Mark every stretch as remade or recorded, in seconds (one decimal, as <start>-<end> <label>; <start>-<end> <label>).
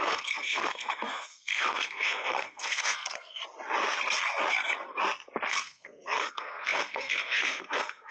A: 0.0-3.4 remade; 3.4-5.5 recorded; 5.5-8.1 remade